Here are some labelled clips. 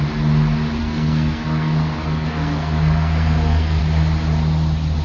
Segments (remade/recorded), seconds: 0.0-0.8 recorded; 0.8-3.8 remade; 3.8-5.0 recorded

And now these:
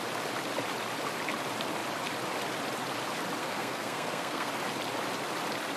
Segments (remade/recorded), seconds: 0.0-3.4 recorded; 3.4-4.5 remade; 4.5-5.8 recorded

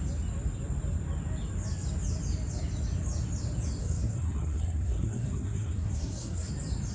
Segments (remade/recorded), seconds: 0.0-3.8 recorded; 3.8-6.5 remade; 6.5-6.9 recorded

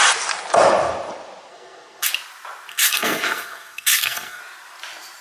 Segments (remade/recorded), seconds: 0.0-1.5 recorded; 1.5-2.1 remade; 2.1-2.7 recorded; 2.7-4.4 remade; 4.4-5.2 recorded

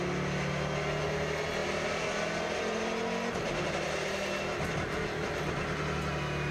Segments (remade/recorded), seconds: 0.0-6.5 recorded

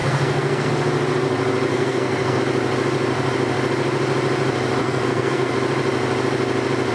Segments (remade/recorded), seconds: 0.0-0.7 remade; 0.7-1.7 recorded; 1.7-2.4 remade; 2.4-4.8 recorded; 4.8-5.5 remade; 5.5-6.9 recorded